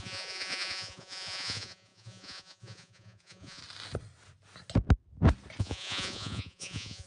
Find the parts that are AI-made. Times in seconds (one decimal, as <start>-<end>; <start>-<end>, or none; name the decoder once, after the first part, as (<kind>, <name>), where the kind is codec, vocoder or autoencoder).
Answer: 0.0-3.6 (vocoder, Vocos); 5.6-7.1